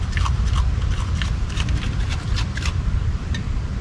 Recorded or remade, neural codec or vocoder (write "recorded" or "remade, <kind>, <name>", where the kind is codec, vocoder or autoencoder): recorded